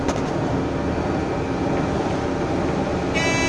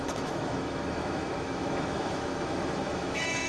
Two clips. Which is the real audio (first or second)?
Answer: first